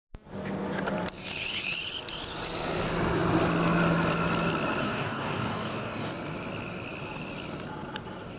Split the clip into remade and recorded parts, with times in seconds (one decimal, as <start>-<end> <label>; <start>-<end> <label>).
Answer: 0.0-4.8 recorded; 4.8-6.1 remade; 6.1-8.4 recorded